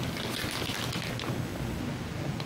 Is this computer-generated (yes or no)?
no